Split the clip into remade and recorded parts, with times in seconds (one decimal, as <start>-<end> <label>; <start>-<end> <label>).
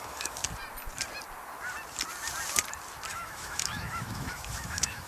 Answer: 0.0-0.4 remade; 0.4-3.1 recorded; 3.1-5.1 remade